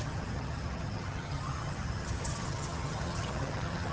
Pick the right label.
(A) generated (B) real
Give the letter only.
A